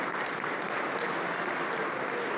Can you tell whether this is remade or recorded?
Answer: recorded